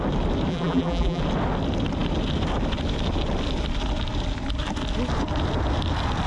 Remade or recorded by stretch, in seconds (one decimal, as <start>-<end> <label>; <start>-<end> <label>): 0.0-0.5 recorded; 0.5-1.2 remade; 1.2-6.3 recorded